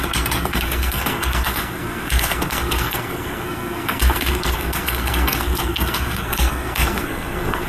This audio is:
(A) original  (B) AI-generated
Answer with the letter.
B